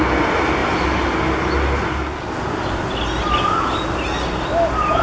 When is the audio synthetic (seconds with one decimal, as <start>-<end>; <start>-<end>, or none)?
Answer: none